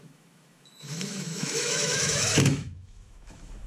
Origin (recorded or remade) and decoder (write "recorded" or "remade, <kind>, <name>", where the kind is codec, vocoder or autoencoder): remade, autoencoder, DAC-VAE